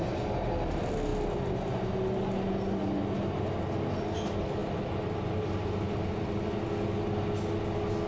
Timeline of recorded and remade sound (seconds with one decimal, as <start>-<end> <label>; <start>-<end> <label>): 0.0-8.1 recorded